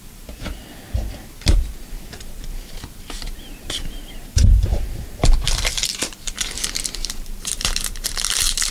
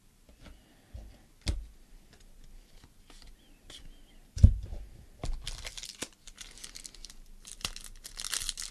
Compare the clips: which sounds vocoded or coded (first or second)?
first